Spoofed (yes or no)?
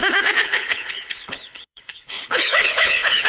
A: yes